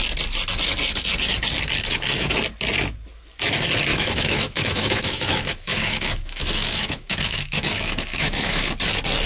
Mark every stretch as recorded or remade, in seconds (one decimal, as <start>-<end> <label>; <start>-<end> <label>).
0.0-3.9 recorded; 3.9-8.7 remade; 8.7-9.3 recorded